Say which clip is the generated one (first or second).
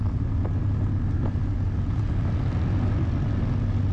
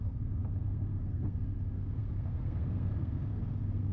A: second